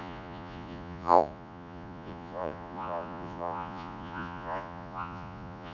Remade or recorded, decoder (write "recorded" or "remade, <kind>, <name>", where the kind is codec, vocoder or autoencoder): remade, vocoder, Vocos